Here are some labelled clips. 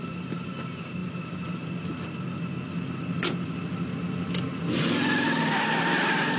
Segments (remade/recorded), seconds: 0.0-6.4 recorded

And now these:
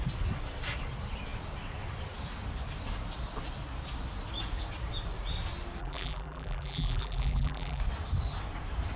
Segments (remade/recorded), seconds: 0.0-5.8 recorded; 5.8-7.8 remade; 7.8-9.0 recorded

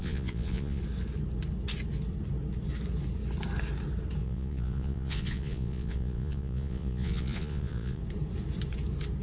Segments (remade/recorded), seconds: 0.0-0.8 remade; 0.8-4.2 recorded; 4.2-8.0 remade; 8.0-9.2 recorded

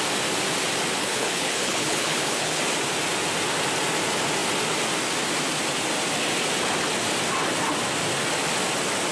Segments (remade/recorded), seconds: 0.0-1.0 recorded; 1.0-2.6 remade; 2.6-9.1 recorded